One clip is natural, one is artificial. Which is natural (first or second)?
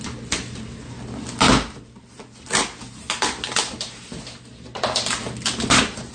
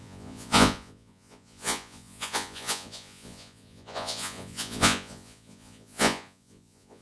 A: first